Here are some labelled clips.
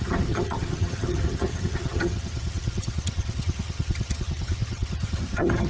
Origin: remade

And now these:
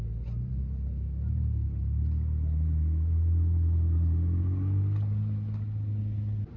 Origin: recorded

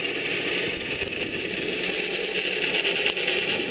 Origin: recorded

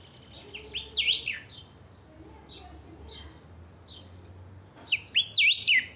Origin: recorded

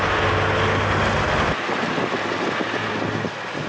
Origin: recorded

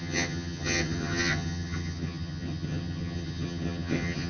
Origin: remade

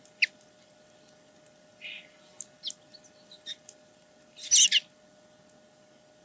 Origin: recorded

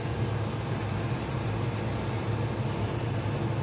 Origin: recorded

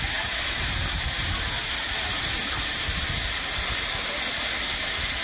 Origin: recorded